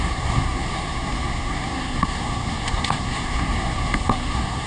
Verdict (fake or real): fake